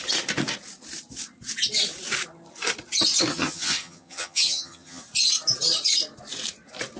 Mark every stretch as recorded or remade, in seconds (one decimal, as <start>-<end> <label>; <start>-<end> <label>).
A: 0.0-3.3 recorded; 3.3-5.0 remade; 5.0-7.0 recorded